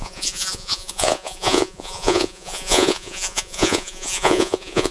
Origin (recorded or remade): remade